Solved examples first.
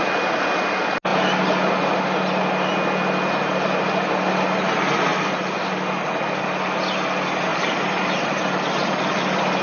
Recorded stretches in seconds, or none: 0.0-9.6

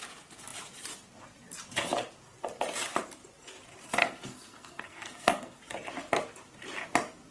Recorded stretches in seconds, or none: 0.0-4.0; 5.6-7.3